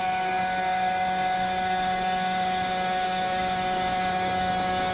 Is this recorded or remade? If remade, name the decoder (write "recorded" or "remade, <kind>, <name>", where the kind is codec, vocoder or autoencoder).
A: remade, codec, DAC